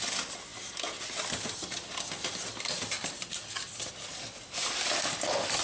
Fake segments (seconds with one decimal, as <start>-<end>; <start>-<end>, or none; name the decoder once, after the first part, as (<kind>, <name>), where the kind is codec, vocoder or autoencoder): none